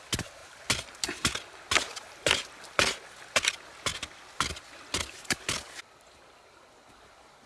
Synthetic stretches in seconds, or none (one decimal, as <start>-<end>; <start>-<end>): none